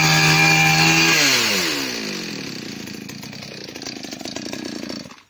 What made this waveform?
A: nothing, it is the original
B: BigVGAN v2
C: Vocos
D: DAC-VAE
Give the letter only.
A